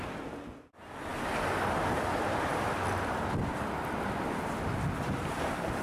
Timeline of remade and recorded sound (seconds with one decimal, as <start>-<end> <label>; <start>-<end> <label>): 0.0-5.8 recorded